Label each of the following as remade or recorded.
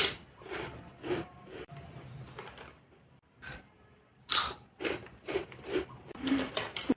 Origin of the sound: remade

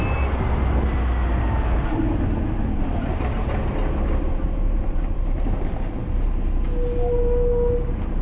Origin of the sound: recorded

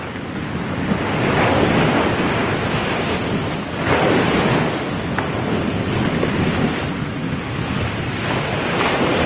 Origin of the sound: recorded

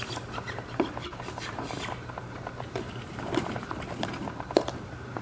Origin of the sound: remade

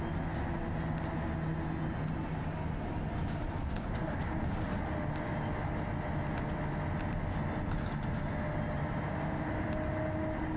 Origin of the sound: recorded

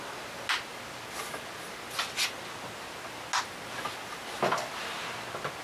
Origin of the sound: recorded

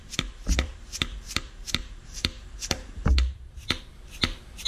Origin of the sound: remade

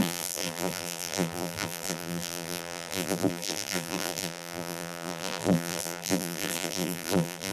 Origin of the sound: remade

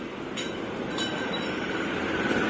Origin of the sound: recorded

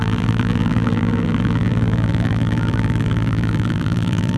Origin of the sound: remade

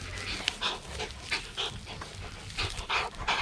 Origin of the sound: recorded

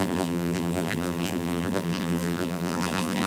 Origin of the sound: remade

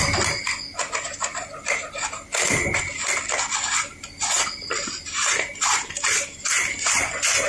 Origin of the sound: recorded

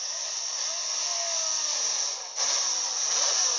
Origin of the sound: recorded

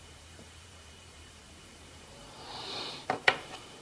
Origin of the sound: remade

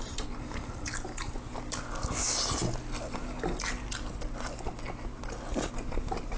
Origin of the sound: recorded